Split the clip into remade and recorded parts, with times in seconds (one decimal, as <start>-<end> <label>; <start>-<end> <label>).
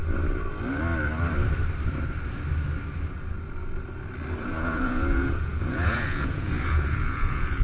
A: 0.0-4.4 recorded; 4.4-7.6 remade